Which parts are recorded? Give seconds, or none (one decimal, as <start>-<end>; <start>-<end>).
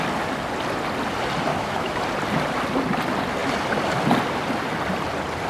0.0-1.5; 2.0-5.5